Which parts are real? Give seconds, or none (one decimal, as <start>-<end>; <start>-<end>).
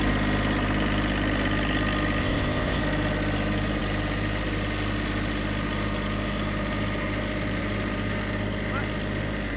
0.0-2.2; 2.8-9.6